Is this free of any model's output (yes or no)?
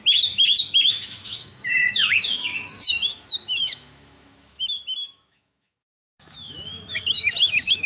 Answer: no